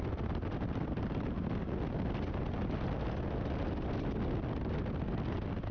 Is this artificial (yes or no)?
no